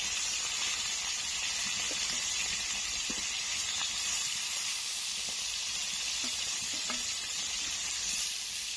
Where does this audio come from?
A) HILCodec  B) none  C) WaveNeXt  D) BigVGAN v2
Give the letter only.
B